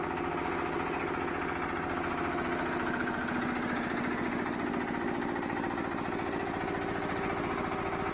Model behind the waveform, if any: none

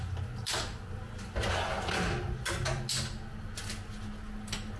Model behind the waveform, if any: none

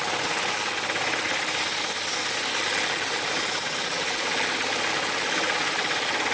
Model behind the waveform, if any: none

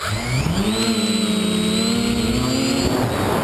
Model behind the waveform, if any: none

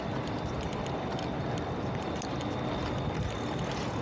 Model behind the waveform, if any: none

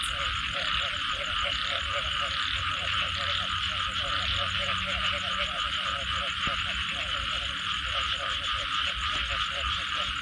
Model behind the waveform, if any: none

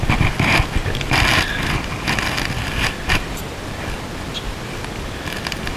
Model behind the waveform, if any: none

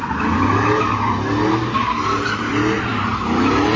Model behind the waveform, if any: none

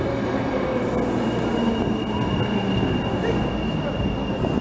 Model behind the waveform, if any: none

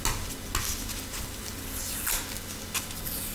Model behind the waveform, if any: none